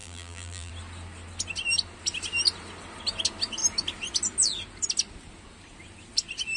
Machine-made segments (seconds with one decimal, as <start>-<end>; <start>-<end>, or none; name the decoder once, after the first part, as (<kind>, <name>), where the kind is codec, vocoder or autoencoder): 0.0-0.7 (vocoder, BigVGAN v2)